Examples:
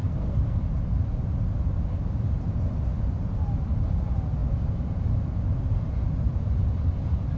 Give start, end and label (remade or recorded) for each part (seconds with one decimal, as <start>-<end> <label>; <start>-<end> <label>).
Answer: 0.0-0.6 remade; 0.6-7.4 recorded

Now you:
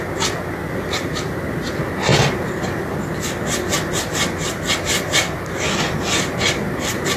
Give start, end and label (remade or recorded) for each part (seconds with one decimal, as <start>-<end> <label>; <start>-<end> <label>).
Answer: 0.0-7.2 recorded

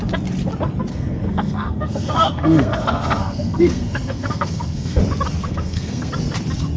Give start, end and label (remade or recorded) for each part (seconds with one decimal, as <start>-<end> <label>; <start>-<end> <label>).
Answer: 0.0-0.9 recorded; 0.9-5.0 remade; 5.0-5.4 recorded; 5.4-6.1 remade; 6.1-6.8 recorded

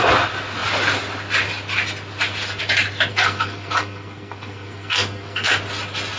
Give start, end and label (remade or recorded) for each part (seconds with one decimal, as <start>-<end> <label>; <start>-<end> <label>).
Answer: 0.0-3.1 recorded; 3.1-5.5 remade; 5.5-6.2 recorded

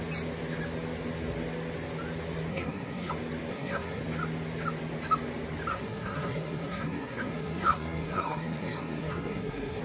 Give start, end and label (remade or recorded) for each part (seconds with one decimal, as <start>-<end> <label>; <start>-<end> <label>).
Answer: 0.0-2.5 recorded; 2.5-3.1 remade; 3.1-3.5 recorded; 3.5-4.0 remade; 4.0-5.7 recorded; 5.7-9.8 remade